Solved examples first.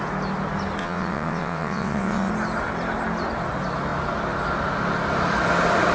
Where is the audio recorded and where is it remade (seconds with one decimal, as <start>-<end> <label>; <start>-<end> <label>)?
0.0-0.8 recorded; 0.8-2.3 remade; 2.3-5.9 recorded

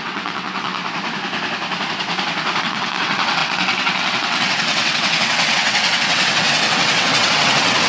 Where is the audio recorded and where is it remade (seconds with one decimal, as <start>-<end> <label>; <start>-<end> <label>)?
0.0-0.8 remade; 0.8-2.6 recorded; 2.6-7.9 remade

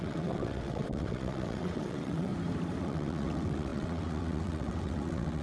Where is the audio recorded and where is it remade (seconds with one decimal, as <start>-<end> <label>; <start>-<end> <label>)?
0.0-2.3 remade; 2.3-2.8 recorded; 2.8-5.4 remade

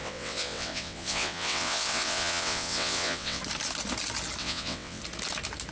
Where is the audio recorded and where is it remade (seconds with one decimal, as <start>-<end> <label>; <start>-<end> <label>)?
0.0-3.4 remade; 3.4-4.4 recorded; 4.4-5.0 remade; 5.0-5.7 recorded

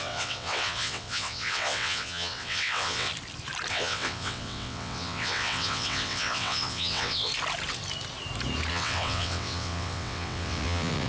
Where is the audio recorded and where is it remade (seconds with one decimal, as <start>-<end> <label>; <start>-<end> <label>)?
0.0-3.1 remade; 3.1-3.7 recorded; 3.7-7.3 remade; 7.3-8.7 recorded; 8.7-11.1 remade

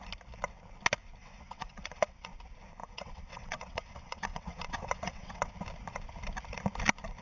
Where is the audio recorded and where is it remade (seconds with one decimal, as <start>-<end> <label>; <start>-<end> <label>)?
0.0-1.2 recorded; 1.2-2.3 remade; 2.3-2.8 recorded; 2.8-5.5 remade; 5.5-7.2 recorded